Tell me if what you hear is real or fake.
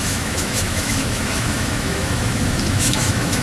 fake